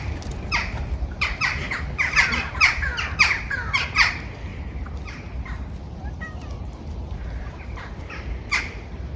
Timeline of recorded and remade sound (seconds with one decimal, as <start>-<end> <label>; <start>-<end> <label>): 0.0-9.2 recorded